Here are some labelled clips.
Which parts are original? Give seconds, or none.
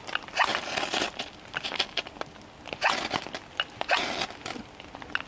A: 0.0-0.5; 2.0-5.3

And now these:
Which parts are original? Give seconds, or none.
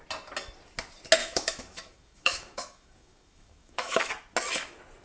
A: 0.0-1.2; 4.1-5.0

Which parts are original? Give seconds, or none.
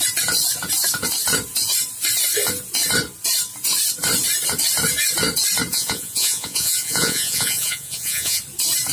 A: 0.0-5.7; 8.4-8.9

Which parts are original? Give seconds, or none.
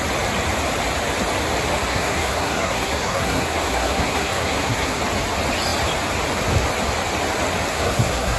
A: 0.0-1.9; 5.0-7.7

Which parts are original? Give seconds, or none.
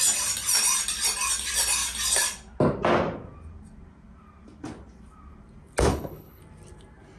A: 0.0-5.9; 6.4-7.2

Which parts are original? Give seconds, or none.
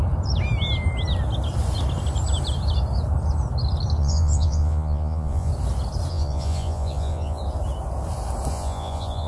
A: 0.0-4.0; 5.5-6.1; 7.4-8.5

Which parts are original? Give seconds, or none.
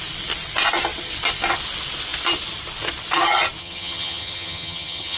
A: 0.0-3.6